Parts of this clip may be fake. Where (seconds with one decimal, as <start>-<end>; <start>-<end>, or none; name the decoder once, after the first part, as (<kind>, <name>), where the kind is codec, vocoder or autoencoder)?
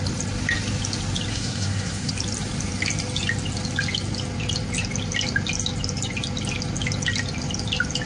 1.3-2.1 (codec, SNAC)